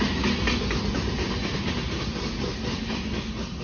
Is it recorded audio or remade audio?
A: recorded